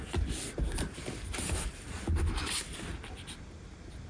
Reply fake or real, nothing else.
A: real